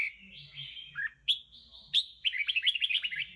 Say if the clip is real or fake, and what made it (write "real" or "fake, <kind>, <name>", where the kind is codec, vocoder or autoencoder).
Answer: real